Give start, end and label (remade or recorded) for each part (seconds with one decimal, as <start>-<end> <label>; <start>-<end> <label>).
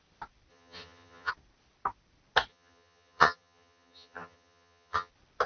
0.0-0.5 recorded; 0.5-1.3 remade; 1.3-2.5 recorded; 2.5-5.1 remade; 5.1-5.5 recorded